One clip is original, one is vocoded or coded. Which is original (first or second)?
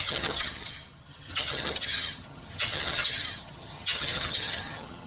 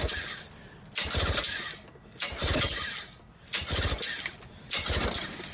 second